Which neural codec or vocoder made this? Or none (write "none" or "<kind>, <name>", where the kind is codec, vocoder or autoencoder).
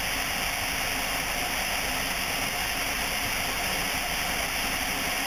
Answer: none